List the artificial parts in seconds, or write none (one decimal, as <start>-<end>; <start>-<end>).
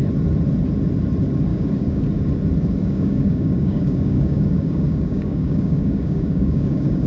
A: 1.5-2.0; 2.8-7.1